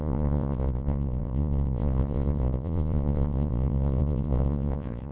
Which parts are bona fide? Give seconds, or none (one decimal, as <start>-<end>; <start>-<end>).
none